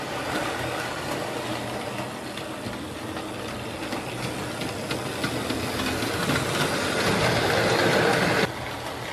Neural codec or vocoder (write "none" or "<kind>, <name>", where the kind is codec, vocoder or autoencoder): none